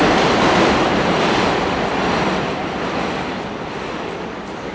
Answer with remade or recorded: remade